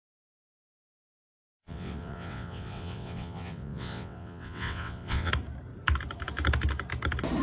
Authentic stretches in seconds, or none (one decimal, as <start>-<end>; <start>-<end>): 0.0-1.6; 5.3-7.4